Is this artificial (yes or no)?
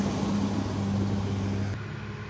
no